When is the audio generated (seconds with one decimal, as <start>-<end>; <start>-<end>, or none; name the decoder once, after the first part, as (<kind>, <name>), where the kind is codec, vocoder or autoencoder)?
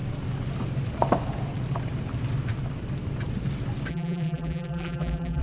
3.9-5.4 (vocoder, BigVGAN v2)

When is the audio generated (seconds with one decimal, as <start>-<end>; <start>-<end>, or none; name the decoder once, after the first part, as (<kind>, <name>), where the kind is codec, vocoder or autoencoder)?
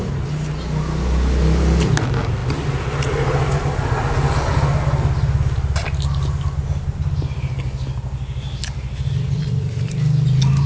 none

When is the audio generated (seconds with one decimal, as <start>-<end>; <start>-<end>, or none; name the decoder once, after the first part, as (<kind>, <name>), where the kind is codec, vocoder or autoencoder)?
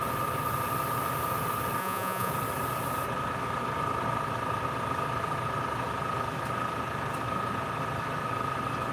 1.8-2.3 (vocoder, Vocos)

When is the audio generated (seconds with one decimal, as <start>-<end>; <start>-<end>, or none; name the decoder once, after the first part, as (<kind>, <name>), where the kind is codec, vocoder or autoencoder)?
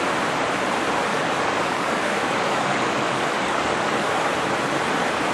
1.1-4.3 (codec, DAC)